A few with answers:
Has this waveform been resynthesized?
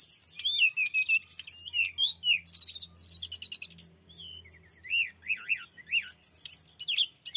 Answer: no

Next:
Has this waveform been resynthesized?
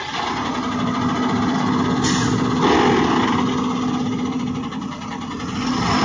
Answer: no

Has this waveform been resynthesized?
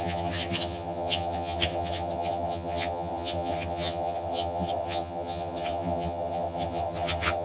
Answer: yes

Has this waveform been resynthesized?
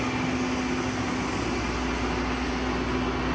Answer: no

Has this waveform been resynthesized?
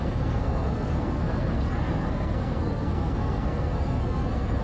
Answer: yes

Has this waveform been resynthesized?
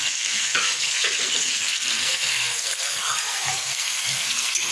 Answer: yes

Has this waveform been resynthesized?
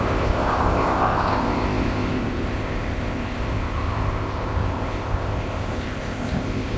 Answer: yes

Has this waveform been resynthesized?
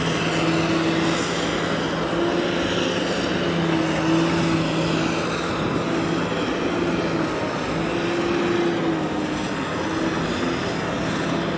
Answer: no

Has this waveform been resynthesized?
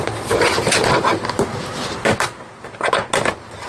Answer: no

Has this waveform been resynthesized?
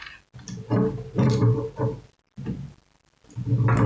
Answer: no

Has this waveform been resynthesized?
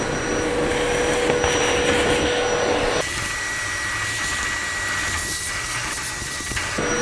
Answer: no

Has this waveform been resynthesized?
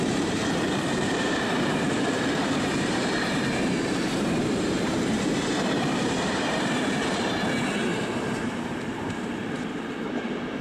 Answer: yes